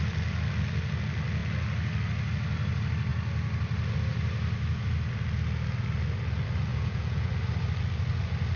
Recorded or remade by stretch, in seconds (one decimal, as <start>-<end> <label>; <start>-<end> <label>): 0.0-6.7 recorded; 6.7-7.3 remade; 7.3-8.6 recorded